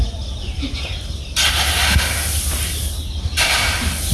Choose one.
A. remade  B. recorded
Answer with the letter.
B